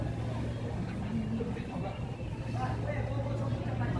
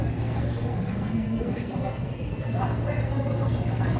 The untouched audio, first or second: first